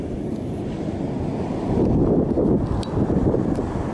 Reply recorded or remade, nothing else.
recorded